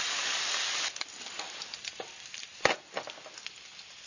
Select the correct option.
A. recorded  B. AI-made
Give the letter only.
A